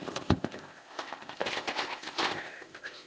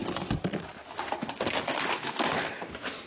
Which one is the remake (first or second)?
first